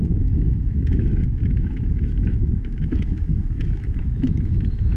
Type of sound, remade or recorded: remade